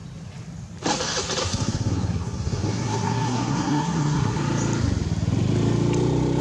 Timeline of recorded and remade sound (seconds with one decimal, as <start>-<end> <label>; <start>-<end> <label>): 0.0-1.4 recorded; 1.4-4.4 remade; 4.4-6.4 recorded